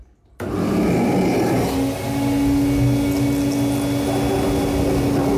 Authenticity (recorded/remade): recorded